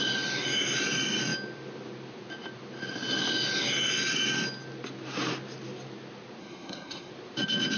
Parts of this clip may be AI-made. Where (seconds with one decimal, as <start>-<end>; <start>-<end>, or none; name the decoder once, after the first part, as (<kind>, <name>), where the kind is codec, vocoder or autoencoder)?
6.4-7.1 (codec, SNAC)